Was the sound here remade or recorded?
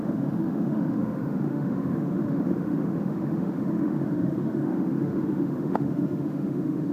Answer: remade